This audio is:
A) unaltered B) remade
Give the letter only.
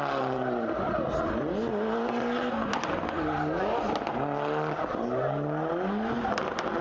A